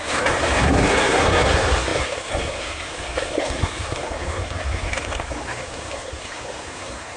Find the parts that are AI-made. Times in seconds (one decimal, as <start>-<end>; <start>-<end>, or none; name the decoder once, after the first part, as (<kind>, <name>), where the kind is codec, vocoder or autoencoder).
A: 0.0-7.2 (codec, SNAC)